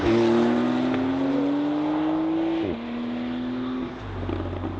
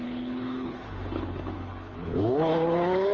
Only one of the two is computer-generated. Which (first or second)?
second